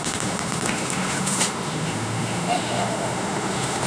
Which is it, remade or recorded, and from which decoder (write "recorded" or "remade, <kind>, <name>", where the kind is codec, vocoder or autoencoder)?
remade, autoencoder, DAC-VAE